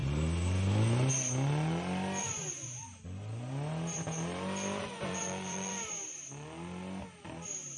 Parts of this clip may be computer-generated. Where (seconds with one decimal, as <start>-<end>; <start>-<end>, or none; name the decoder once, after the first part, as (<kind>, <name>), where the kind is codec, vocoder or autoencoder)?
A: 2.2-2.8 (vocoder, Vocos); 4.8-5.7